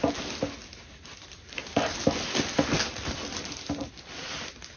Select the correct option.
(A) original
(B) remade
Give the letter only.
A